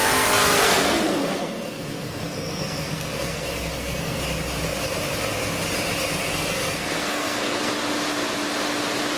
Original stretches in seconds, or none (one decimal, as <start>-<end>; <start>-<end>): 4.2-6.3; 7.7-9.2